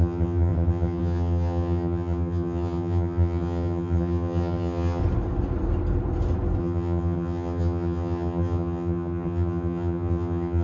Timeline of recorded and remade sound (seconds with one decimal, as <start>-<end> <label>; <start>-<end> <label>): 0.0-5.0 remade; 5.0-6.6 recorded; 6.6-10.6 remade